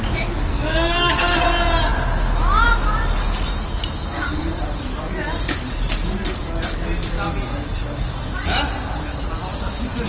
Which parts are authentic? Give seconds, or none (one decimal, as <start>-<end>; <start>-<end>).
0.0-0.5; 1.4-10.1